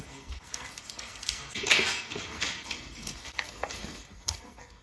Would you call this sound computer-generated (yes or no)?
yes